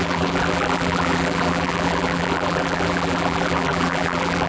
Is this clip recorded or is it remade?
remade